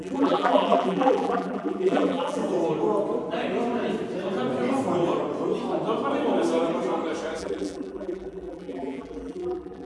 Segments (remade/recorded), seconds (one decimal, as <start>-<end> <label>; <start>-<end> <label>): 0.0-2.4 remade; 2.4-7.4 recorded; 7.4-9.8 remade